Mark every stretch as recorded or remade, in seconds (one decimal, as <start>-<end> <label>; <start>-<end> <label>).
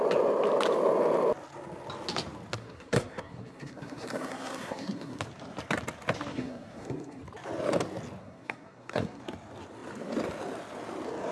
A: 0.0-2.6 recorded; 2.6-5.2 remade; 5.2-6.3 recorded; 6.3-7.2 remade; 7.2-8.2 recorded; 8.2-9.2 remade; 9.2-11.3 recorded